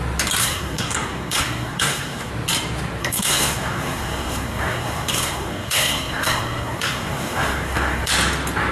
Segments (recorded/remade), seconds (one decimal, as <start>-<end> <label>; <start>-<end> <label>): 0.0-0.4 recorded; 0.4-2.3 remade; 2.3-3.0 recorded; 3.0-8.1 remade; 8.1-8.7 recorded